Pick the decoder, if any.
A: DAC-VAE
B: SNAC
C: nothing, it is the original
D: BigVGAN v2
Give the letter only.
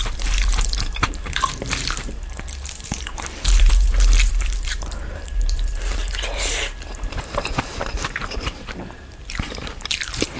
D